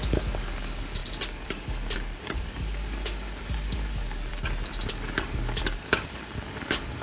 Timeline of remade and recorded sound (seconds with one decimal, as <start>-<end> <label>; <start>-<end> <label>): 0.0-4.3 remade; 4.3-4.9 recorded; 4.9-7.0 remade